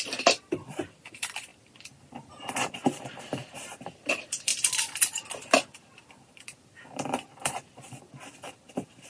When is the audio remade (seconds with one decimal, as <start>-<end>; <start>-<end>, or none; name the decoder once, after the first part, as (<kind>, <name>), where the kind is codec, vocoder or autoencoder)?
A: 0.0-4.5 (vocoder, BigVGAN v2); 6.1-9.1